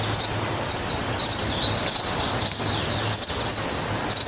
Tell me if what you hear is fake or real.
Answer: real